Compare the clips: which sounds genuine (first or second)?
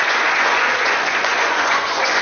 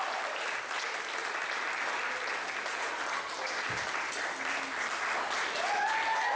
second